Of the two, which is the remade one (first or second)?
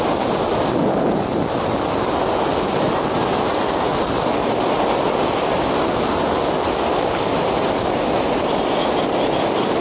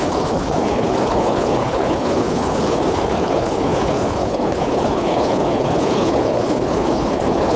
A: second